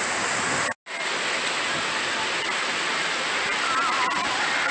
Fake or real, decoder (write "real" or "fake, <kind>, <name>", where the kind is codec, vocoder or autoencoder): real